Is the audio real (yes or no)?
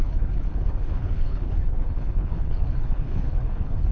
no